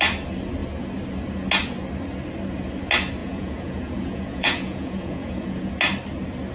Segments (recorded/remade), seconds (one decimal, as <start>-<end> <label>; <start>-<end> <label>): 0.0-3.2 recorded; 3.2-5.7 remade; 5.7-6.5 recorded